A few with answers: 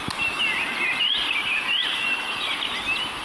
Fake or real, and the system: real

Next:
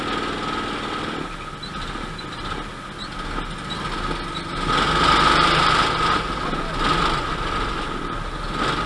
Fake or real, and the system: real